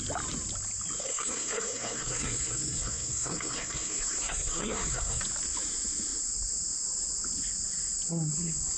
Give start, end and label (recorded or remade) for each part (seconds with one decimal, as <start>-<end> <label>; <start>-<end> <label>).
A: 0.0-1.0 recorded; 1.0-5.2 remade; 5.2-8.8 recorded

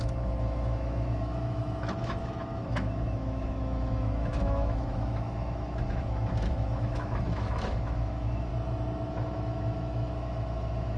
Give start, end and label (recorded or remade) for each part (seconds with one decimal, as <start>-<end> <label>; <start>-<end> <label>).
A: 0.0-8.5 remade; 8.5-9.1 recorded; 9.1-11.0 remade

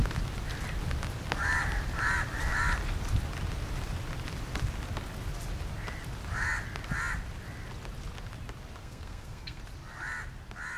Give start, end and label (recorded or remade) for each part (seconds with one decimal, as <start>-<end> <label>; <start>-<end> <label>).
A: 0.0-8.8 recorded; 8.8-9.6 remade; 9.6-10.8 recorded

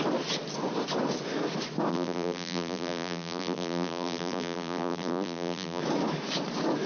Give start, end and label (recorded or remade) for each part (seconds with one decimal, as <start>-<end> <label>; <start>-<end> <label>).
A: 0.0-1.9 recorded; 1.9-5.8 remade; 5.8-6.9 recorded

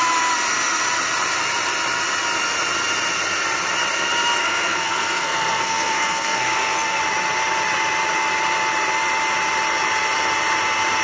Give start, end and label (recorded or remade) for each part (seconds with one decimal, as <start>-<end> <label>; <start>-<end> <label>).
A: 0.0-4.4 recorded; 4.4-7.0 remade; 7.0-11.0 recorded

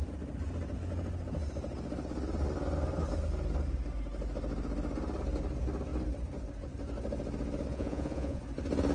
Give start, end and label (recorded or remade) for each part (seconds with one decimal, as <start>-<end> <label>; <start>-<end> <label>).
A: 0.0-7.7 recorded; 7.7-8.4 remade; 8.4-8.9 recorded

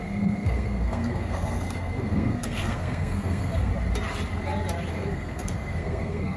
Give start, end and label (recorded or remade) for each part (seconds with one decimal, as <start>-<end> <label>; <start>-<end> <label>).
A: 0.0-3.7 remade; 3.7-4.9 recorded; 4.9-6.4 remade